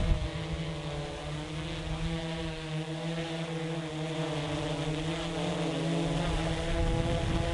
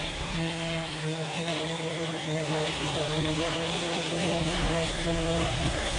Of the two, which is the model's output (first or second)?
second